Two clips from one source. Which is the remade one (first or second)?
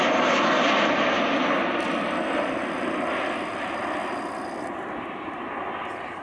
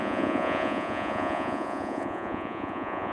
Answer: second